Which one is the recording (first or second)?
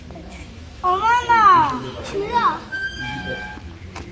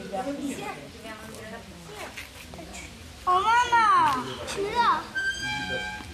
second